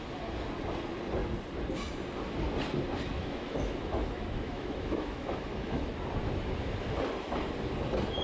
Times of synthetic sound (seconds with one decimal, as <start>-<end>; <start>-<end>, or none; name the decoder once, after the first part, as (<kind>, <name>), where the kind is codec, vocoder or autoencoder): 3.1-5.9 (autoencoder, DAC-VAE)